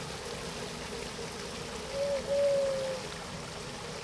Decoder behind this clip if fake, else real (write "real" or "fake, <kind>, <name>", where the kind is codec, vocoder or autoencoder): real